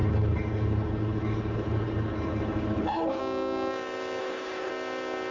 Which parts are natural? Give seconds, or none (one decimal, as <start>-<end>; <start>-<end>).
3.2-4.2; 4.7-5.3